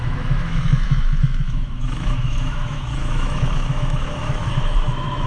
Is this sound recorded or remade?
remade